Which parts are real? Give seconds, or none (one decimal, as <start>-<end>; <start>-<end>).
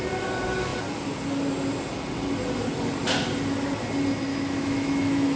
0.0-4.3